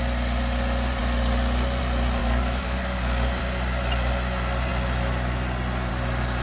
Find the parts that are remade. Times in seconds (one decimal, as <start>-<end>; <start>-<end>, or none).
2.2-3.4